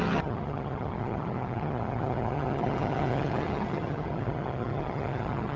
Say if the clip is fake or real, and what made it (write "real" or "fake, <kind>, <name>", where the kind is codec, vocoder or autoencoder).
fake, vocoder, HiFi-GAN